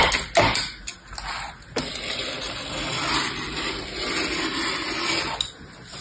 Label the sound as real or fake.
real